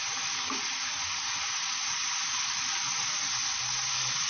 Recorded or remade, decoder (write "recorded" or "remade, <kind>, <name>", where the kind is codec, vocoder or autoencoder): recorded